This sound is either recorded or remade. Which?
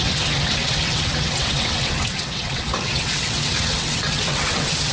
remade